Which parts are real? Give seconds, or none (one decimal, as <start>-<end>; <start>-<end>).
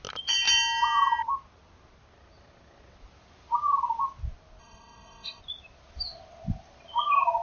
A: 0.0-4.6; 5.4-7.4